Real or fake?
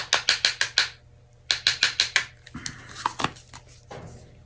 real